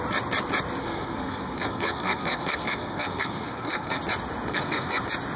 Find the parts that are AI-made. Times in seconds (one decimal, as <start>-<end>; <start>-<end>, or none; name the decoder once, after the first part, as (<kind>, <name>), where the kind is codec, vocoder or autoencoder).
0.8-4.0 (codec, SNAC); 4.5-5.0

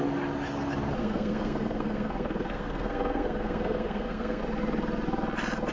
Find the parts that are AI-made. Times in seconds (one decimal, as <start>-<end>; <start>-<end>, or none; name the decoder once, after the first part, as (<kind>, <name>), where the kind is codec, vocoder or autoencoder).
1.0-4.4 (codec, SNAC)

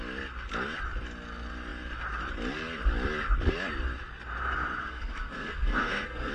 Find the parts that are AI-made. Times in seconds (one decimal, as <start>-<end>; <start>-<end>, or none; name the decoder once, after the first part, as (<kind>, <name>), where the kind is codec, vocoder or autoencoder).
4.8-6.3 (codec, SNAC)

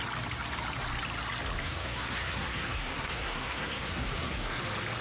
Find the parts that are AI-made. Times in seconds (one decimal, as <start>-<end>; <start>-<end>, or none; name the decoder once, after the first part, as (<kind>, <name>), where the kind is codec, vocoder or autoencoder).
1.6-4.6 (codec, SNAC)

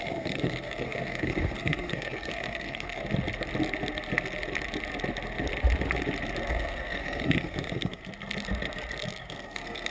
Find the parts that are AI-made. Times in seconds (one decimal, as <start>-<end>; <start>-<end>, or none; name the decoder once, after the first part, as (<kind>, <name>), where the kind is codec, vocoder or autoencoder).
0.0-3.0 (codec, SNAC); 6.5-8.0; 9.3-9.9

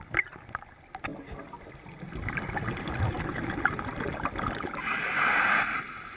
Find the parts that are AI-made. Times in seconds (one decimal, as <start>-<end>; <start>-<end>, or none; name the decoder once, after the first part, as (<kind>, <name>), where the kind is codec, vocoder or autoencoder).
none

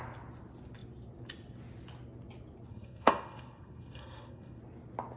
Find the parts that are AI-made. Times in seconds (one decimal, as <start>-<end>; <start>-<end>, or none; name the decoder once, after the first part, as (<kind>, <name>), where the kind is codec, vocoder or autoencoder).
2.7-4.6 (codec, SNAC)